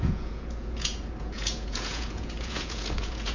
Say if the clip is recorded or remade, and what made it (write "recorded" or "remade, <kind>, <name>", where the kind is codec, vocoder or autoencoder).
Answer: remade, vocoder, Vocos